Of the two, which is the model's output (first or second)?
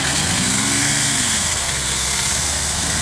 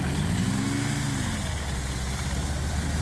first